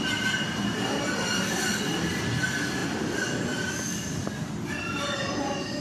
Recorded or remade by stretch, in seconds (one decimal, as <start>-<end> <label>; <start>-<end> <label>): 0.0-5.8 recorded